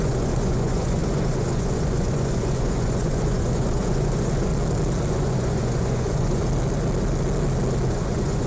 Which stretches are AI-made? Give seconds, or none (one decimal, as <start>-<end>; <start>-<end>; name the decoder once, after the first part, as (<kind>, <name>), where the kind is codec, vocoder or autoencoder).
0.0-4.5 (vocoder, Vocos); 5.1-6.4; 7.9-8.5